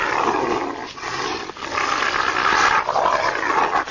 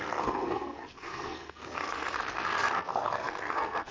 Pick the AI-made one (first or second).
second